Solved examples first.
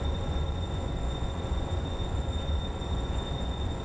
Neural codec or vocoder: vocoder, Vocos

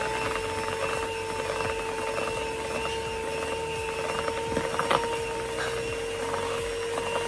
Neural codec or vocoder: none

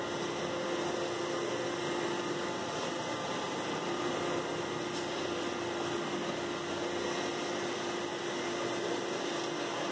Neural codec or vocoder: none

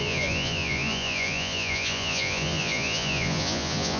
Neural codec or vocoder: vocoder, Vocos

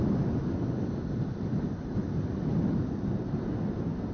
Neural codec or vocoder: none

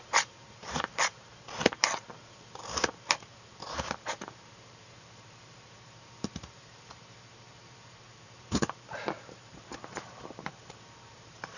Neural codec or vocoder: vocoder, BigVGAN v2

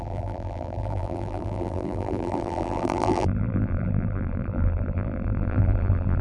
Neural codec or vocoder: vocoder, BigVGAN v2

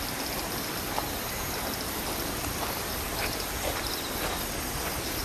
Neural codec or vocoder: none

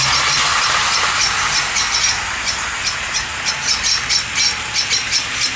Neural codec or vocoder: none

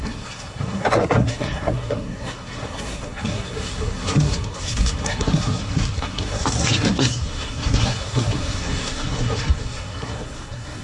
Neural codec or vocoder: codec, SNAC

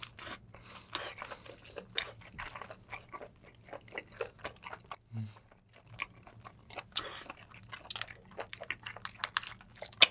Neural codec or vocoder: none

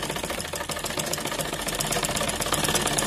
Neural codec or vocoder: none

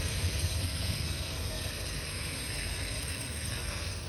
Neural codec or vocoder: codec, SNAC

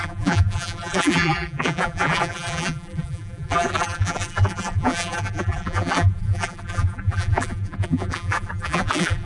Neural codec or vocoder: vocoder, BigVGAN v2